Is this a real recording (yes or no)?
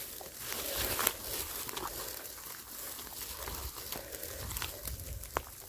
yes